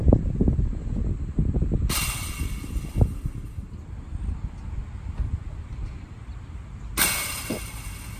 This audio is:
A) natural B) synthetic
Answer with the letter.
A